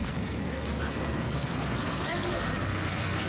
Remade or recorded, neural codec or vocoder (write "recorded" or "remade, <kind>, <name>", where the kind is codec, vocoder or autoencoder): remade, codec, SNAC